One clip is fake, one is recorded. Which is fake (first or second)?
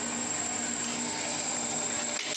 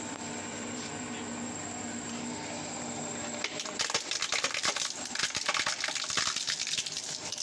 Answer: second